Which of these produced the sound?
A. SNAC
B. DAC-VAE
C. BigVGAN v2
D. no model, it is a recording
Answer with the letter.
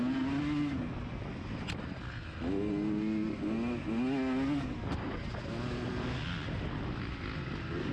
D